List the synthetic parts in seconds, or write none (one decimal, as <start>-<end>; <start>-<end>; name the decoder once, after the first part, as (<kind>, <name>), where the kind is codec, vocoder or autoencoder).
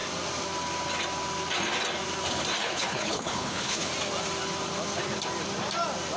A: 2.6-3.9 (codec, HILCodec)